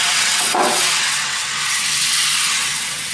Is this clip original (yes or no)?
no